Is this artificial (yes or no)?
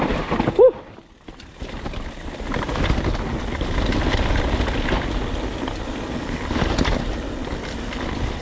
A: no